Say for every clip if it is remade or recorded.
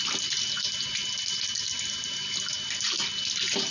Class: recorded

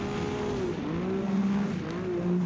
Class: recorded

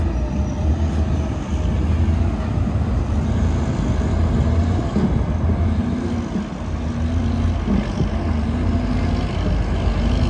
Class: recorded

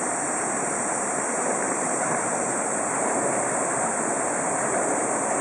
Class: remade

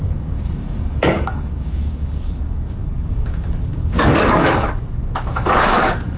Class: remade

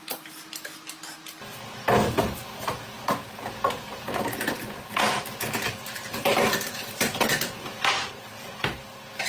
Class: recorded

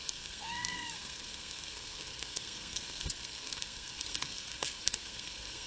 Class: remade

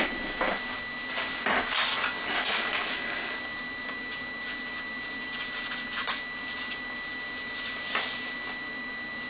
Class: recorded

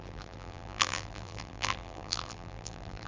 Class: remade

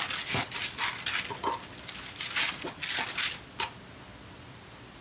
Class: recorded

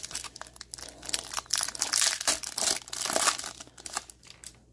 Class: recorded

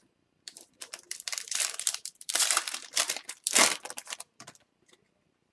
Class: remade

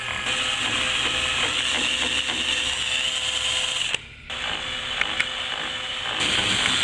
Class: recorded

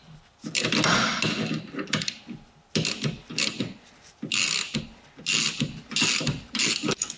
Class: recorded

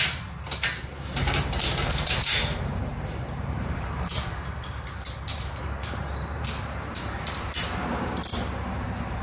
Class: remade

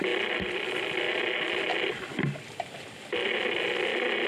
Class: recorded